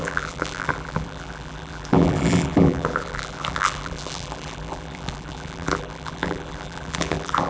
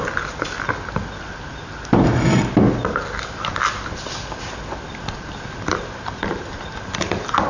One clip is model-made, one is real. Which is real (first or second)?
second